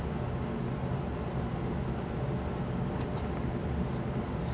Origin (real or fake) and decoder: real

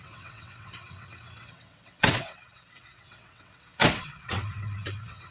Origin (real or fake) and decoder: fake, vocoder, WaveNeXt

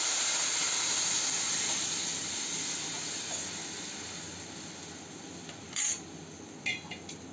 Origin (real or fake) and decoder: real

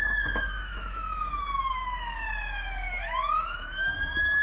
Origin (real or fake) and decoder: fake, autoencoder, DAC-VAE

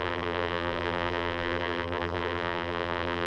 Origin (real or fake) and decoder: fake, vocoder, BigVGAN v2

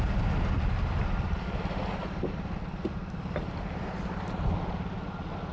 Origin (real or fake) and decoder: real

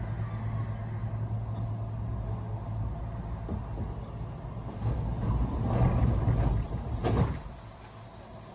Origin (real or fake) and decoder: real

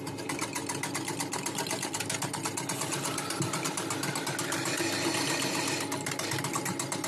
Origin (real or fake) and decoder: real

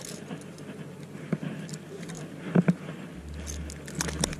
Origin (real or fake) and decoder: real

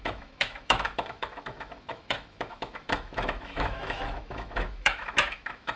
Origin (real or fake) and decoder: fake, autoencoder, DAC-VAE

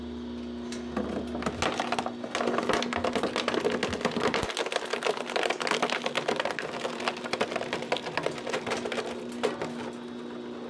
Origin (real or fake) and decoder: real